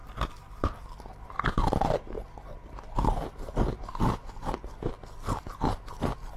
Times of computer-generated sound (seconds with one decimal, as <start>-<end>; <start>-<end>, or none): none